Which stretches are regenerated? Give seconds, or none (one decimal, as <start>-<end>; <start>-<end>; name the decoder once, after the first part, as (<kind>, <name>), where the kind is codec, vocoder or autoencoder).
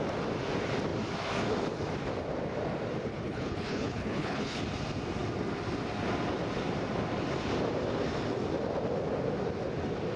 3.1-4.6 (codec, HILCodec)